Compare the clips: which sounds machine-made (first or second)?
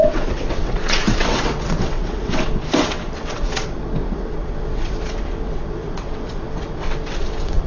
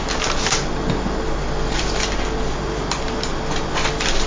first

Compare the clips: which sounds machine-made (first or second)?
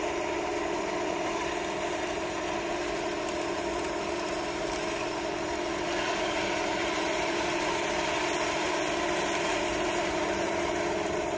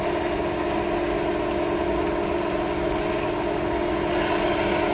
first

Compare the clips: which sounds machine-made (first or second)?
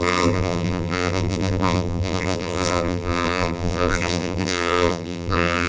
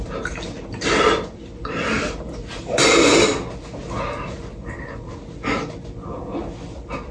first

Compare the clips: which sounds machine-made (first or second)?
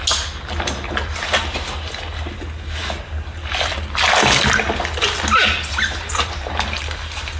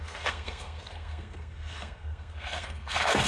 second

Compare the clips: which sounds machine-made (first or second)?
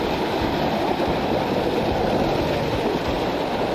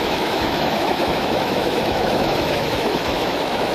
second